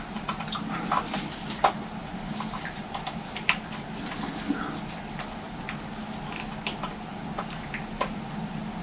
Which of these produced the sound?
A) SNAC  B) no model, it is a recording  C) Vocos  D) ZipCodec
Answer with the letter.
B